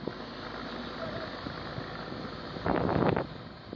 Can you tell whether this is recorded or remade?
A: recorded